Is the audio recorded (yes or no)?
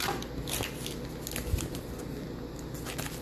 yes